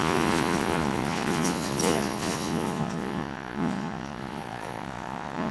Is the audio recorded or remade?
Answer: remade